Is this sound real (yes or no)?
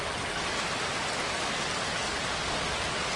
yes